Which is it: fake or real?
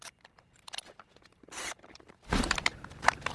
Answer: fake